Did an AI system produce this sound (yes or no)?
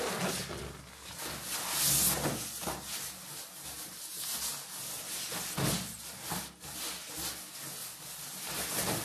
no